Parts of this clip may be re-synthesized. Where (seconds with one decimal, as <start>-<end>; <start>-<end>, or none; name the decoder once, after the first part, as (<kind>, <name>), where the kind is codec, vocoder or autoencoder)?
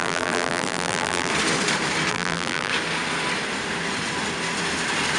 0.0-1.3 (vocoder, BigVGAN v2); 2.1-2.7